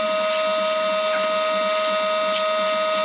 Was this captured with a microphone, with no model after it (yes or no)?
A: yes